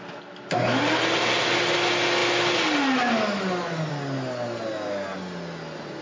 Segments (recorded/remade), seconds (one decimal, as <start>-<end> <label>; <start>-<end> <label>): 0.0-6.0 recorded